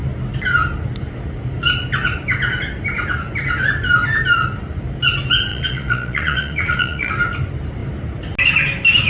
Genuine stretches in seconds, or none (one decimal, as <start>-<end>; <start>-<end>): 0.0-5.5; 7.1-9.1